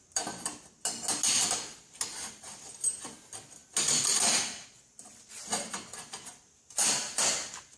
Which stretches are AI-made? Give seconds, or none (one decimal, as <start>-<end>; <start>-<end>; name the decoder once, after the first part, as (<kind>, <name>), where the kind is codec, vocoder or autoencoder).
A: none